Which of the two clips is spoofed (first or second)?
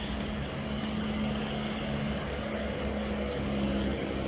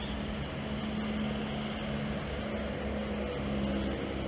first